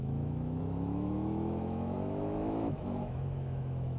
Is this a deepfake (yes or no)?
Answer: yes